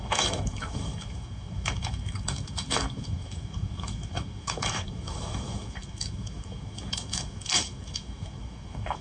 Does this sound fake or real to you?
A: fake